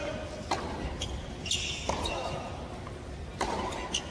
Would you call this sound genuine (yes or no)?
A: yes